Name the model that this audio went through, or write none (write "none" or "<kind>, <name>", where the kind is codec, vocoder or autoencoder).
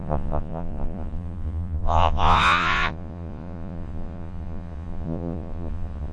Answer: vocoder, Vocos